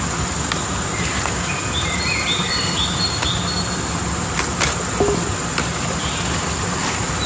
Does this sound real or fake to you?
real